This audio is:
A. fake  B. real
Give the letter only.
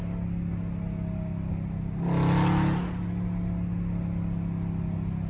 B